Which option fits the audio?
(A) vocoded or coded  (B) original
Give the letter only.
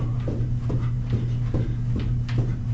B